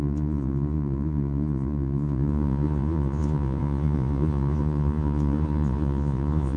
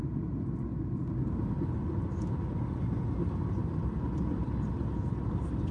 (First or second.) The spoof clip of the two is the first